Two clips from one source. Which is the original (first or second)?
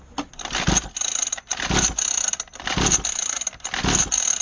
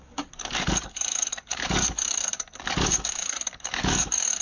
first